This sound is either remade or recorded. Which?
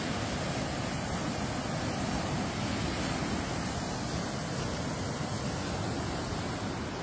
recorded